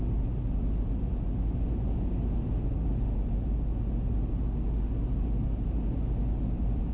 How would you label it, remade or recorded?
recorded